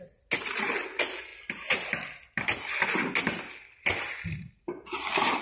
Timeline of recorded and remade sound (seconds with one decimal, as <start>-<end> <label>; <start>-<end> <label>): 0.0-5.4 recorded